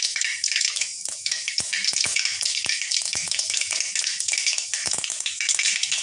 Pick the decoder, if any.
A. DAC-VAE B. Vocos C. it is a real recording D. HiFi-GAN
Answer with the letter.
A